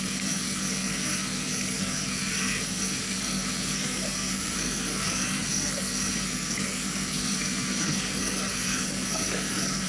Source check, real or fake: fake